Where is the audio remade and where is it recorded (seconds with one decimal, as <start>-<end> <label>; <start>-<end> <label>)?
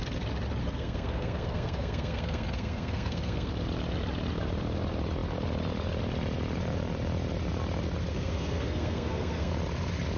0.0-0.6 recorded; 0.6-3.5 remade; 3.5-8.1 recorded; 8.1-9.5 remade; 9.5-10.2 recorded